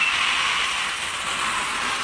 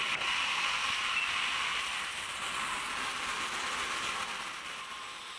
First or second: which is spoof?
second